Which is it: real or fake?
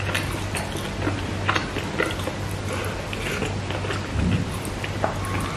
real